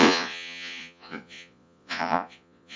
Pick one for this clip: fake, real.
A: fake